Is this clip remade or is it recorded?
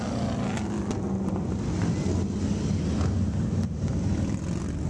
recorded